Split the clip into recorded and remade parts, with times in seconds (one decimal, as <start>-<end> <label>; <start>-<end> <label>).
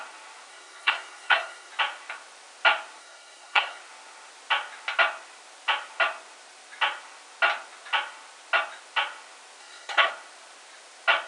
0.0-0.5 recorded; 0.5-1.7 remade; 1.7-3.0 recorded; 3.0-3.8 remade; 3.8-9.6 recorded; 9.6-10.1 remade; 10.1-11.3 recorded